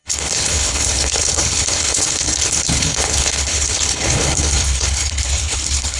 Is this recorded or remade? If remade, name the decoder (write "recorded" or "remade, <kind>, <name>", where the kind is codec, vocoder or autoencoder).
remade, codec, HILCodec